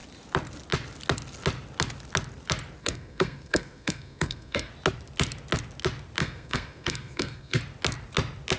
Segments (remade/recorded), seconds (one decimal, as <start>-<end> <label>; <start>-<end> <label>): 0.0-2.8 recorded; 2.8-4.7 remade; 4.7-6.2 recorded; 6.2-7.6 remade; 7.6-8.6 recorded